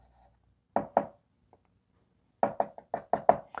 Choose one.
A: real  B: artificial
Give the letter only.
A